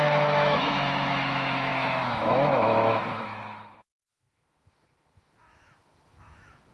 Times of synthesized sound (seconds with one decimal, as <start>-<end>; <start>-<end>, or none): 0.0-6.7